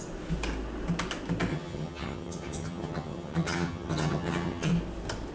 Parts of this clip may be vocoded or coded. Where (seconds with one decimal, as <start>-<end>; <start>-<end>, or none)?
1.5-4.7